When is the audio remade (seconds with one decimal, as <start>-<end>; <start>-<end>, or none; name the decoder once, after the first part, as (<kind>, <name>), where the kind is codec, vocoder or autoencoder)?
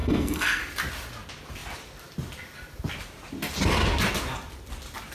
0.0-0.6 (codec, SNAC)